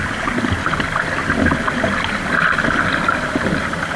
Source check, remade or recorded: recorded